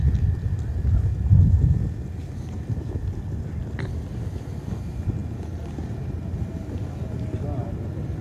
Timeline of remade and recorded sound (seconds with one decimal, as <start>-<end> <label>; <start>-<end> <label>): 0.0-8.2 recorded